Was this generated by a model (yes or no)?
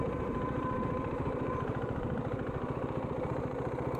yes